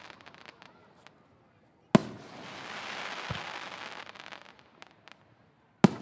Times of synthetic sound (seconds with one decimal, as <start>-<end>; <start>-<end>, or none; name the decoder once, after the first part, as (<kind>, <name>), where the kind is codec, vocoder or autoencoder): none

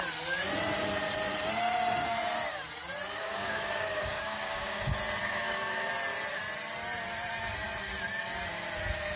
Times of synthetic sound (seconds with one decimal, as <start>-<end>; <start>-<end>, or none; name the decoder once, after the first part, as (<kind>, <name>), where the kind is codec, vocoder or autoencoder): 3.2-4.8 (codec, DAC); 5.2-5.9

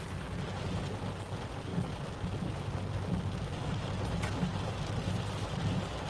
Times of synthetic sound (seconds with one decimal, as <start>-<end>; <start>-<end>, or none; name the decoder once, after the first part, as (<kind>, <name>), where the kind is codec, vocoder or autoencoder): none

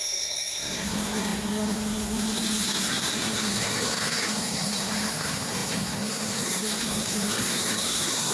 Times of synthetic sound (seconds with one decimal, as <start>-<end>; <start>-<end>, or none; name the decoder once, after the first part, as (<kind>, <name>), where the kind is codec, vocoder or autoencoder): 0.0-8.3 (codec, SNAC)

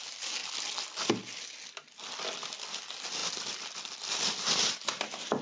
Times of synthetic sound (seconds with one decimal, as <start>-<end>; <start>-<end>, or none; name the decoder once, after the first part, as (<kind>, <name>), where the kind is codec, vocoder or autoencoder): none

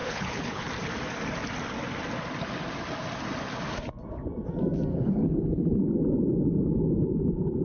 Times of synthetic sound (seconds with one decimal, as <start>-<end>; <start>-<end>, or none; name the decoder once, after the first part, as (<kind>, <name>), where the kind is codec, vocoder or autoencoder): 0.0-0.7 (codec, HILCodec); 4.9-5.8

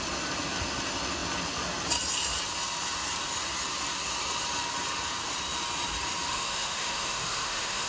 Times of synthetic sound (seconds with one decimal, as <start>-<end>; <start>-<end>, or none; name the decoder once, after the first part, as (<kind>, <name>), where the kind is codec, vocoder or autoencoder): 6.3-7.9 (autoencoder, DAC-VAE)

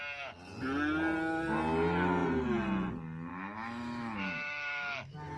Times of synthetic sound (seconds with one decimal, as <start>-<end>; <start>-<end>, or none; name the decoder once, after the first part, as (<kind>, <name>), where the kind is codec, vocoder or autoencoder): 3.3-5.4 (autoencoder, DAC-VAE)